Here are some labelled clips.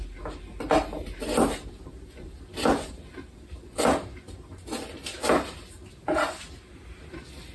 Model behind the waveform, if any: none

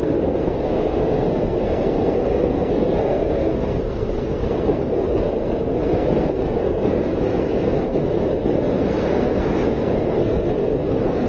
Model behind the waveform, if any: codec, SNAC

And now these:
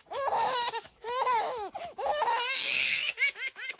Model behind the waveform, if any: autoencoder, DAC-VAE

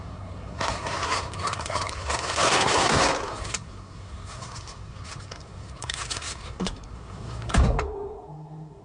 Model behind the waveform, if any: codec, SNAC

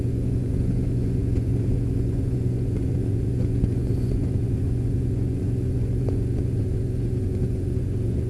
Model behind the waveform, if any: vocoder, Vocos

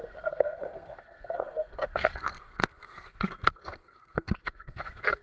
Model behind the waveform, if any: codec, SNAC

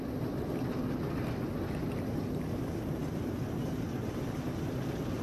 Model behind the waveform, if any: none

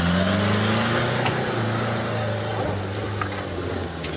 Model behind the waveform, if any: none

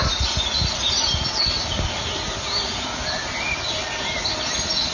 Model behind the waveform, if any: none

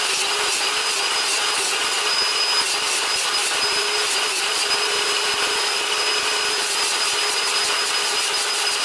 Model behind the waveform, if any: none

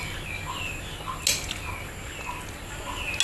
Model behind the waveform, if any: none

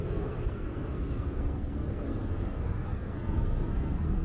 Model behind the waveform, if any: codec, SNAC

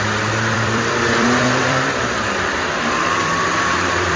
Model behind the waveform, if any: vocoder, BigVGAN v2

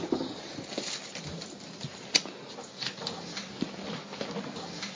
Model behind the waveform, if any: none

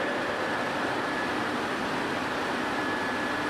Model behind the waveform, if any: none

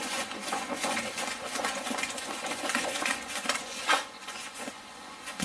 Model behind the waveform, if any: vocoder, Vocos